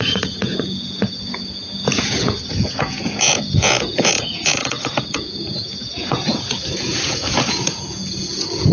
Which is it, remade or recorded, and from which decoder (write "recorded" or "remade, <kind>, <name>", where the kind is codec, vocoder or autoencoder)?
remade, vocoder, Vocos